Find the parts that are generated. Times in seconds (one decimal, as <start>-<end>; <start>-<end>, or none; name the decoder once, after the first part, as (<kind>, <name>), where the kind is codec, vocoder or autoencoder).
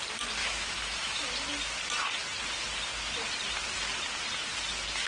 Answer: 0.4-1.3 (autoencoder, DAC-VAE)